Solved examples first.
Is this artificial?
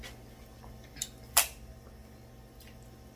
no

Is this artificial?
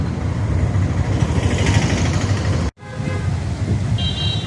no